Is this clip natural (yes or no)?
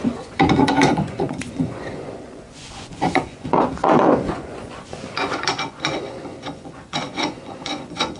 no